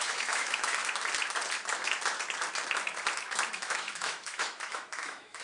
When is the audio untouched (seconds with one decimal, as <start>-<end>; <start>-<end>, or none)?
0.8-3.5